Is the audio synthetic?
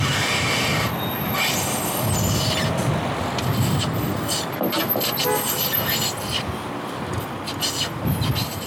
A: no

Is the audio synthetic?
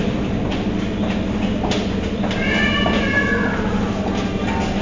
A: no